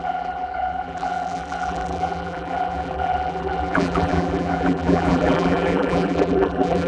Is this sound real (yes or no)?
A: no